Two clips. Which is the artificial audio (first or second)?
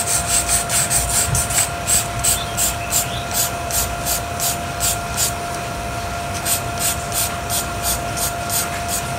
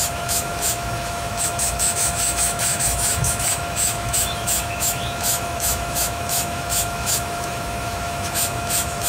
second